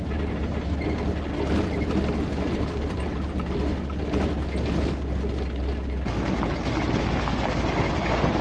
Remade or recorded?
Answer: recorded